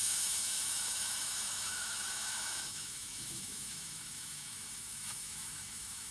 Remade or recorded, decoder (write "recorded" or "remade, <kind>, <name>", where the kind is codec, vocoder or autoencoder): remade, autoencoder, DAC-VAE